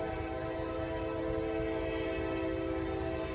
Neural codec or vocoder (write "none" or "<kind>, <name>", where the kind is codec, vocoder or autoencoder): none